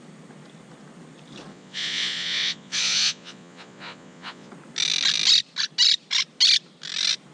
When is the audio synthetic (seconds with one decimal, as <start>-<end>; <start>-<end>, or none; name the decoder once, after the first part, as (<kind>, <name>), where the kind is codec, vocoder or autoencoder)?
1.5-4.5 (vocoder, Vocos)